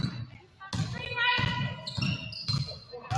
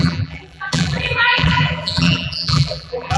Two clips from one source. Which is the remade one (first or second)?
second